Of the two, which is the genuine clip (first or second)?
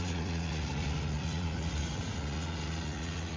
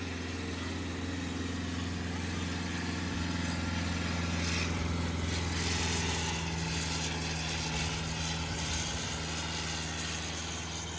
second